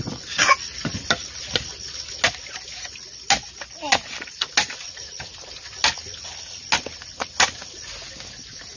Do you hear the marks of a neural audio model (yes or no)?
no